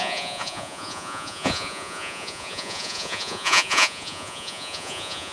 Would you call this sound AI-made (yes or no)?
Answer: yes